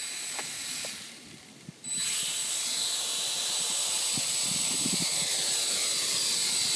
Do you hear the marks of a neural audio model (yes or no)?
no